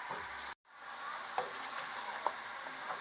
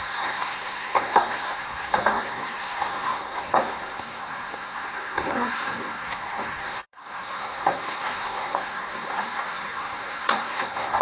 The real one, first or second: first